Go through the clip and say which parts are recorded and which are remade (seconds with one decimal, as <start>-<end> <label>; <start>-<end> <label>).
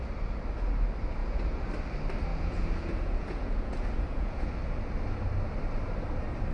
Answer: 0.0-1.2 recorded; 1.2-1.7 remade; 1.7-2.3 recorded; 2.3-4.5 remade; 4.5-6.5 recorded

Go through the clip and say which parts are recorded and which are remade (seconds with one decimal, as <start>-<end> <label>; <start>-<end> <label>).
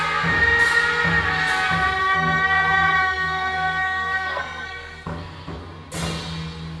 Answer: 0.0-2.0 recorded; 2.0-5.6 remade; 5.6-6.8 recorded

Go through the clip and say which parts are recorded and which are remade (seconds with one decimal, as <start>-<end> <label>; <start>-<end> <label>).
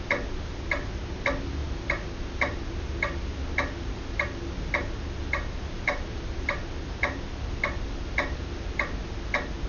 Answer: 0.0-9.7 recorded